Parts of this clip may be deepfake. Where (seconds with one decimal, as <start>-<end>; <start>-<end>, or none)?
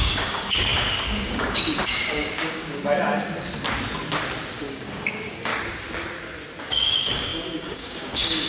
0.0-2.8; 4.7-5.5; 6.6-8.5